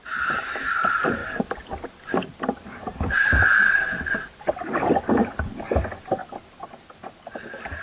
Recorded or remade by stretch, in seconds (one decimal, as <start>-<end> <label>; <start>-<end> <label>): 0.0-7.8 recorded